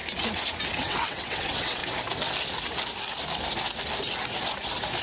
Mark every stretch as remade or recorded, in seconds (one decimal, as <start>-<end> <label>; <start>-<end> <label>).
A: 0.0-0.7 recorded; 0.7-1.8 remade; 1.8-5.0 recorded